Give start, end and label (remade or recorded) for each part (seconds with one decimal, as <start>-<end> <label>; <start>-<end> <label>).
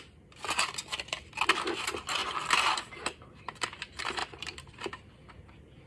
0.0-2.2 recorded; 2.2-3.0 remade; 3.0-4.2 recorded; 4.2-4.9 remade; 4.9-5.9 recorded